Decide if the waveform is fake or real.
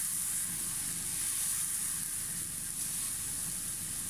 real